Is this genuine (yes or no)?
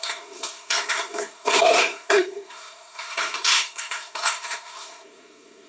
no